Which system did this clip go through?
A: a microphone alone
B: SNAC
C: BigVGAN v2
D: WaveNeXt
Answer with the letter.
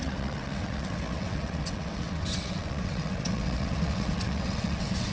D